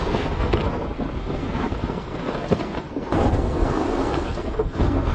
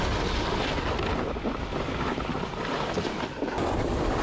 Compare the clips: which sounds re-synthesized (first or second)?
first